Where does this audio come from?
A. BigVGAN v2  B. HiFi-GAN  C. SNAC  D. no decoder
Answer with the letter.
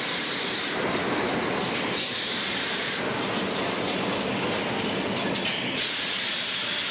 D